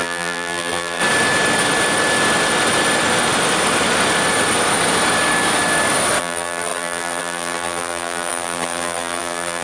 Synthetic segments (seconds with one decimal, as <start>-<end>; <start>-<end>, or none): 0.0-1.0; 6.2-9.6